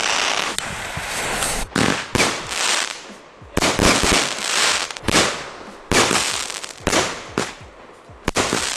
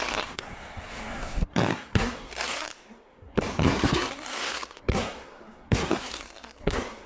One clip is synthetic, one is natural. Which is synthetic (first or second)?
second